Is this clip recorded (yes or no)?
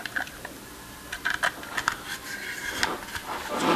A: yes